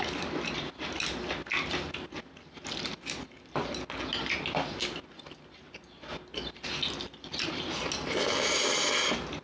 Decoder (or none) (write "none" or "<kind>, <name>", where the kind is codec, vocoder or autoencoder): none